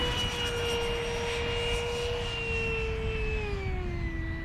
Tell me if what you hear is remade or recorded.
recorded